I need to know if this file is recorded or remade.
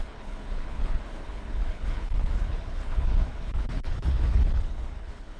remade